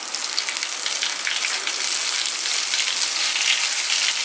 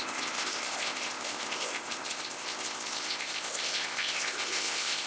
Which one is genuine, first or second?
first